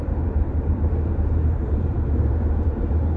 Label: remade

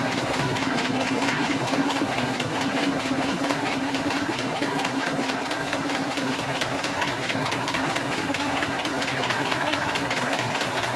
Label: remade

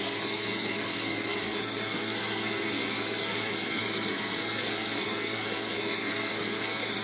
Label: remade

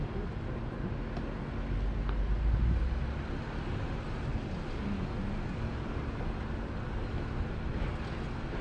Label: recorded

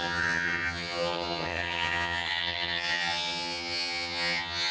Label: remade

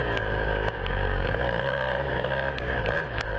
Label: remade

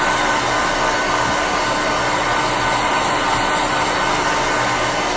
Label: recorded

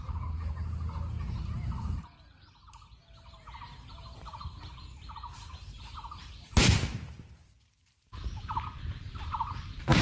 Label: recorded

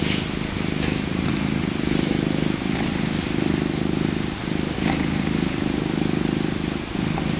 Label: recorded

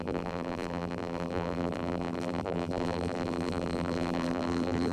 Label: remade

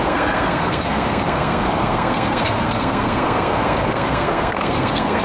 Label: remade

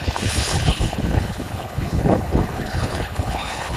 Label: remade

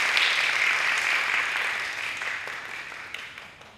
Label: recorded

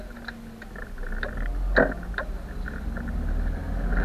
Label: recorded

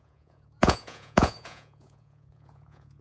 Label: remade